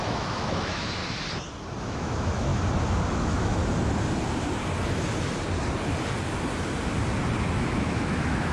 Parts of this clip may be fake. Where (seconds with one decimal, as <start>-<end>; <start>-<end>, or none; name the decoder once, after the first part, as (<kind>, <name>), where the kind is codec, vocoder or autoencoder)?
0.0-1.0 (autoencoder, DAC-VAE); 1.8-2.5; 3.2-3.6; 7.5-8.5